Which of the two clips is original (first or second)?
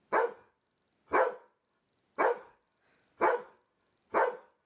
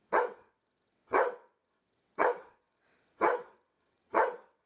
first